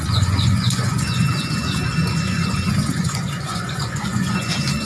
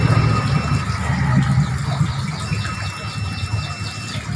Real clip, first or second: second